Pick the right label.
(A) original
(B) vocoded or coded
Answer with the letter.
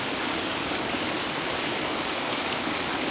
B